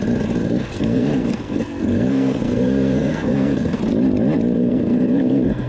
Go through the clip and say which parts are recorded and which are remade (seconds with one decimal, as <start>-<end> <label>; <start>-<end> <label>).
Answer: 0.0-0.4 recorded; 0.4-3.8 remade; 3.8-4.6 recorded; 4.6-5.7 remade